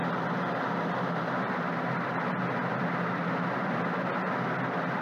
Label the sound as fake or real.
real